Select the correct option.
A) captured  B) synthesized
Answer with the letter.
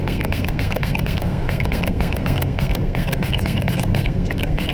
B